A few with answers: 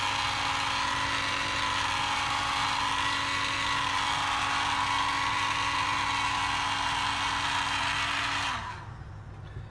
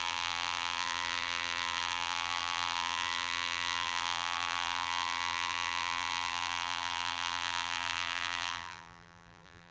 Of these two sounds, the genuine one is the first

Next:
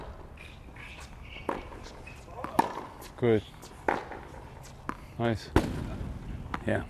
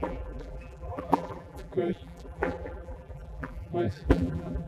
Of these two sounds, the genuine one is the first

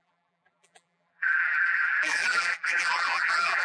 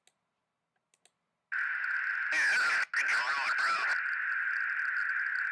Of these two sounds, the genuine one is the second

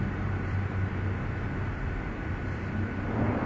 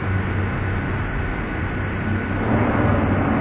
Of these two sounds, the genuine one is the second